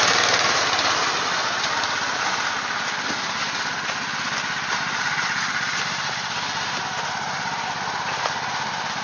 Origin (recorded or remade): recorded